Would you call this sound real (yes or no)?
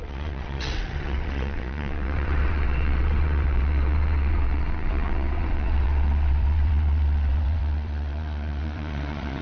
no